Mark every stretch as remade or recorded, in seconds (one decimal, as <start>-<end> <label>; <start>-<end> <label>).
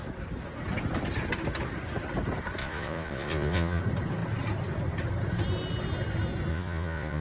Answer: 0.0-2.6 recorded; 2.6-3.8 remade; 3.8-6.5 recorded; 6.5-7.2 remade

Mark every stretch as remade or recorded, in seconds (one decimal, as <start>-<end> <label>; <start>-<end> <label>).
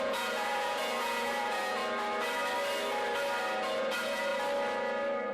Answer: 0.0-1.8 remade; 1.8-3.8 recorded; 3.8-4.3 remade; 4.3-5.3 recorded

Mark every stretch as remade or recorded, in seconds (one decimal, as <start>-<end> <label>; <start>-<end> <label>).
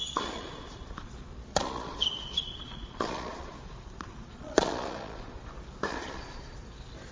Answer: 0.0-1.1 remade; 1.1-1.5 recorded; 1.5-5.5 remade; 5.5-5.9 recorded; 5.9-6.5 remade; 6.5-7.1 recorded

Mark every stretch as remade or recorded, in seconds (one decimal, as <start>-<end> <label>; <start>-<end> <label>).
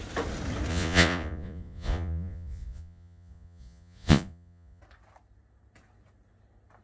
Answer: 0.0-0.7 recorded; 0.7-4.8 remade; 4.8-6.8 recorded